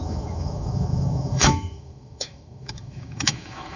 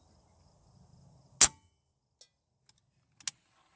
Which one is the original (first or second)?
second